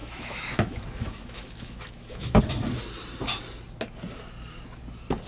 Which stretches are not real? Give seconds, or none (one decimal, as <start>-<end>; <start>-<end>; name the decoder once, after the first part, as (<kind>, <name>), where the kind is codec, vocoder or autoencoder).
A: 0.0-2.4 (autoencoder, DAC-VAE)